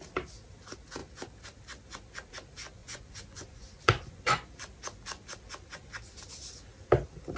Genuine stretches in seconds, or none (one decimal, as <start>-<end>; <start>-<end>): 0.0-2.8; 4.5-7.4